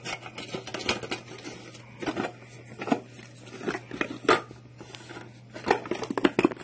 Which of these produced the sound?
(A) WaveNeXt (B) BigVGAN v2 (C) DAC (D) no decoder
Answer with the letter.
D